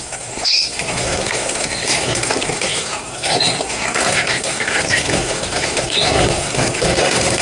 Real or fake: fake